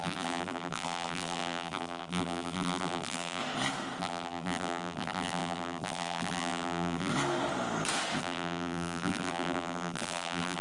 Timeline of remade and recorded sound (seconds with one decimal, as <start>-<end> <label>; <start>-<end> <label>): 0.0-3.4 remade; 3.4-4.0 recorded; 4.0-7.1 remade; 7.1-8.2 recorded; 8.2-10.6 remade